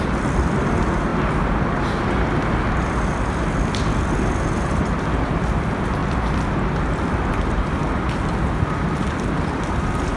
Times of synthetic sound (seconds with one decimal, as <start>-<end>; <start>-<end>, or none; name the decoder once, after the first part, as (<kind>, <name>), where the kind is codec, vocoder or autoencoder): none